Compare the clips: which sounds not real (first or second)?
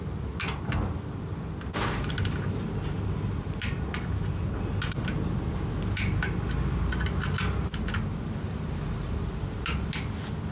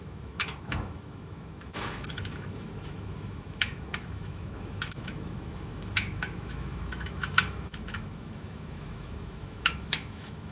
second